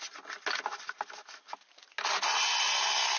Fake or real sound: real